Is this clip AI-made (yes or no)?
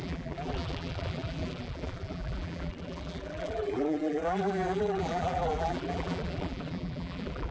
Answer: yes